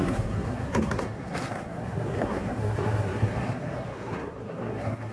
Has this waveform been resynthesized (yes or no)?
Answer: yes